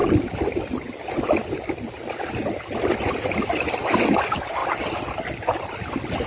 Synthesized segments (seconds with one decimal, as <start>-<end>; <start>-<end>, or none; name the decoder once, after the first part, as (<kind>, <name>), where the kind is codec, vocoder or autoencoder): none